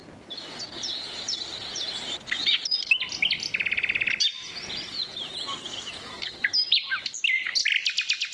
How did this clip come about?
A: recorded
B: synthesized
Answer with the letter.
A